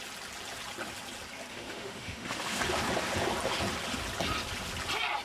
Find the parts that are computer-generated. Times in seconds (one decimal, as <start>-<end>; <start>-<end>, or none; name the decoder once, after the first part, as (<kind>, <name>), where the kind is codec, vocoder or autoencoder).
1.5-2.6 (autoencoder, DAC-VAE)

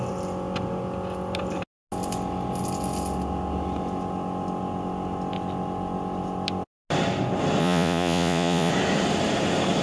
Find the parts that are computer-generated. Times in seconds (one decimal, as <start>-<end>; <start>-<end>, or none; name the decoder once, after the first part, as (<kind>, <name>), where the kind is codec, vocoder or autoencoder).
7.6-8.7 (vocoder, Vocos)

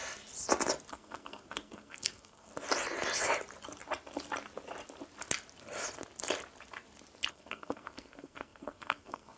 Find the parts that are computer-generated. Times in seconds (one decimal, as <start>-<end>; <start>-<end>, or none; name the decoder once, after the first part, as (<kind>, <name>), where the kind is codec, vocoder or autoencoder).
0.9-2.5 (codec, SNAC); 7.3-9.4

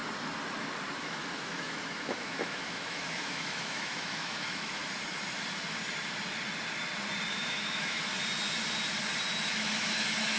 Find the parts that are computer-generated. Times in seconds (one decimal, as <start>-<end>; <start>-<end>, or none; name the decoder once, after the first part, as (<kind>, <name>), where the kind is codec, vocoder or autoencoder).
1.0-4.8 (autoencoder, DAC-VAE); 7.3-8.1; 9.5-10.4

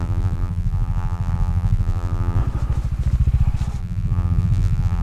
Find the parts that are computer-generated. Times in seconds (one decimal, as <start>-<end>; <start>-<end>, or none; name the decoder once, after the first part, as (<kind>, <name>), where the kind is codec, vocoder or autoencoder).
0.0-2.4 (vocoder, BigVGAN v2); 3.8-5.0

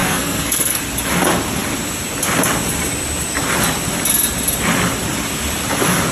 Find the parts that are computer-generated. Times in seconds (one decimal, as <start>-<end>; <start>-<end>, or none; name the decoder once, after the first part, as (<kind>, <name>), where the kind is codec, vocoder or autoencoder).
0.0-0.8 (codec, SNAC)

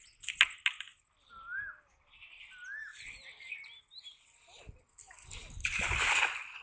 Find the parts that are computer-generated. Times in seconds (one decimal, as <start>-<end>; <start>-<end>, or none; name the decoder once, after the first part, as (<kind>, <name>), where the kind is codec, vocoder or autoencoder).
0.9-2.4 (vocoder, BigVGAN v2); 2.9-3.5